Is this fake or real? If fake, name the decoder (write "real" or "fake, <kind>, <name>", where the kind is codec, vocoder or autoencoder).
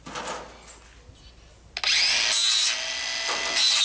real